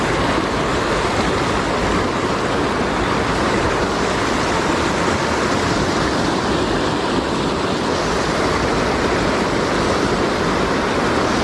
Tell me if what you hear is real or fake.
real